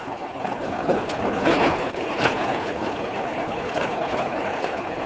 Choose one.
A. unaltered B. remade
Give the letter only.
B